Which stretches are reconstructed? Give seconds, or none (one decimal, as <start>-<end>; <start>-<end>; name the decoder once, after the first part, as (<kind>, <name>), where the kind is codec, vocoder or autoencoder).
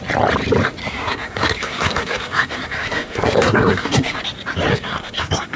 0.8-4.2 (codec, SNAC); 4.7-5.6